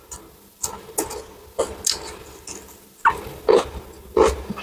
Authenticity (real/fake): real